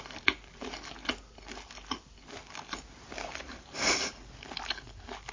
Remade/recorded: recorded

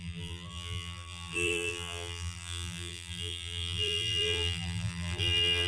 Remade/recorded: remade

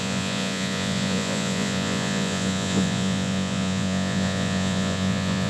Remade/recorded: remade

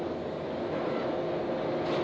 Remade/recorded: recorded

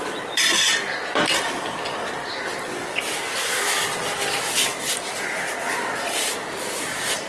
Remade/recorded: remade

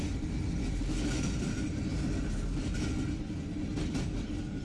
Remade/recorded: recorded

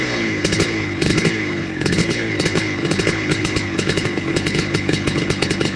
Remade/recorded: remade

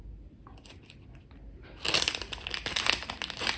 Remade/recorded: recorded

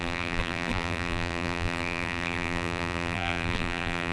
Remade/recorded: remade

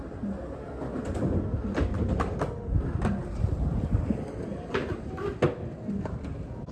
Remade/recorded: recorded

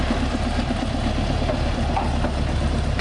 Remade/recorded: remade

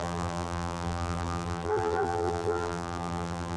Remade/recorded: remade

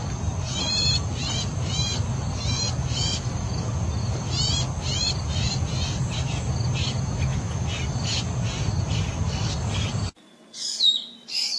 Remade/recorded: recorded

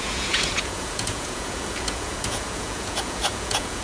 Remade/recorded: remade